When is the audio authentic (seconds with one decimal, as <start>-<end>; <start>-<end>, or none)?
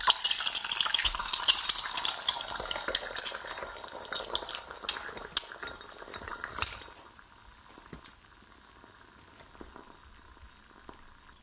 0.0-11.4